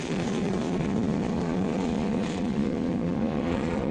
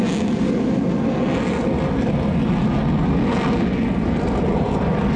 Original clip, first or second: second